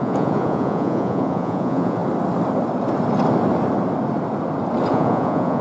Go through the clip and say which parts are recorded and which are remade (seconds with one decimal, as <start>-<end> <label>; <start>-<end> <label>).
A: 0.0-2.0 remade; 2.0-4.9 recorded; 4.9-5.6 remade